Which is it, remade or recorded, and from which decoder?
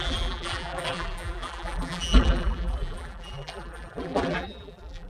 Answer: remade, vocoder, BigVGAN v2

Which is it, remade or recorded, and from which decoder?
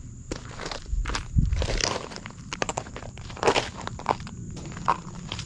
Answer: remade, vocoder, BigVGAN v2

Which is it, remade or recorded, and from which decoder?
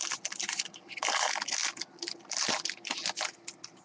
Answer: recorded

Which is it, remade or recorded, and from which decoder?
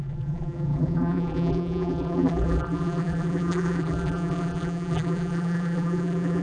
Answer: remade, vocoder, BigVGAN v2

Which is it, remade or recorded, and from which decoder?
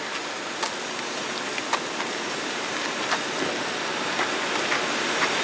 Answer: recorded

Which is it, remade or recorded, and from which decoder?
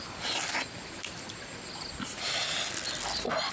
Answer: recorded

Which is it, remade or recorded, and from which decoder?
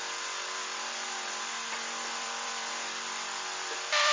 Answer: remade, vocoder, BigVGAN v2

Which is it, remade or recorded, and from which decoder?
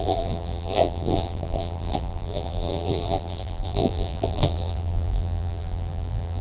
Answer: remade, vocoder, BigVGAN v2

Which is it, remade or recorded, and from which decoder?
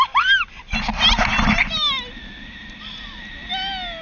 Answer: recorded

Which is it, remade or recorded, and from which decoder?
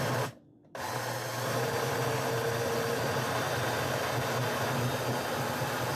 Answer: recorded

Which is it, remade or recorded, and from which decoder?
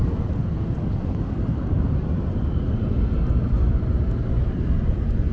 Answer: recorded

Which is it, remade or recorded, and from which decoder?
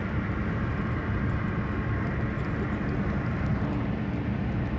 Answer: recorded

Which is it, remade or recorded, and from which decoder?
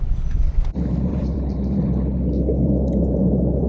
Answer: remade, vocoder, BigVGAN v2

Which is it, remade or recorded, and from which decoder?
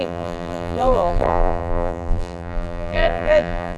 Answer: remade, vocoder, BigVGAN v2